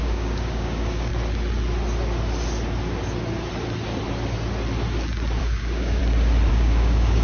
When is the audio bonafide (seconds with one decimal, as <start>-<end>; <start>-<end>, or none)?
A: 1.1-5.4; 6.0-6.5